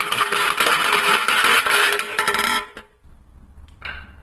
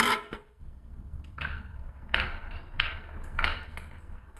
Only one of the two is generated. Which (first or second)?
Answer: second